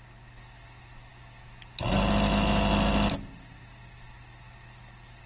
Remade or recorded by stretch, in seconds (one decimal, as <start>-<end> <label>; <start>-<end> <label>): 0.0-5.3 recorded